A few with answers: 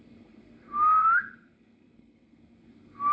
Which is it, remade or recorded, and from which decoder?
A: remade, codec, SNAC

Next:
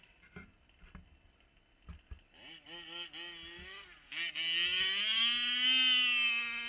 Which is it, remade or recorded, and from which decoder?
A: recorded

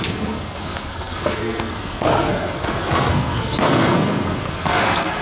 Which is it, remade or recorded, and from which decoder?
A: remade, codec, SNAC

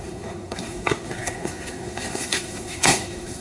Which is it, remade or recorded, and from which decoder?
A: remade, codec, SNAC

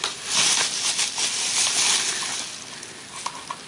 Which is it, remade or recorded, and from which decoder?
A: recorded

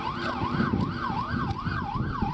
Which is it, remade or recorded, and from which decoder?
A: recorded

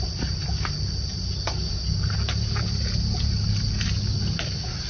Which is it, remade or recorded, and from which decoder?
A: recorded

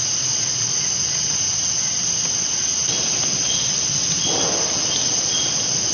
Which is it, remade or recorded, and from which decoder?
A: recorded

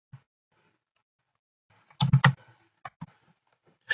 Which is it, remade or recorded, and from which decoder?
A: recorded